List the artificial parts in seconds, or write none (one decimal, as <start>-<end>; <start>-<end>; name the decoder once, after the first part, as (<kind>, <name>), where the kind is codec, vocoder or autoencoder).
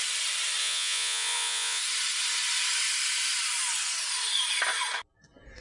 0.6-1.8 (vocoder, Vocos)